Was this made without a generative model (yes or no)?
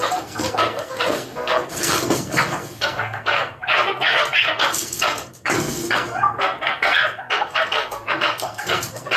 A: no